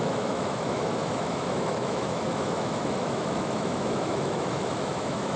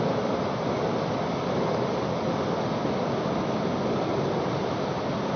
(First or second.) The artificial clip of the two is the first